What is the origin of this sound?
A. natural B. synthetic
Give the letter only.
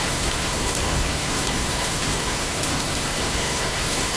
B